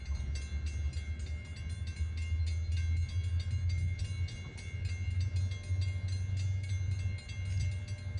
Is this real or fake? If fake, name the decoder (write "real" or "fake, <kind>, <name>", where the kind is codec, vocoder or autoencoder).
real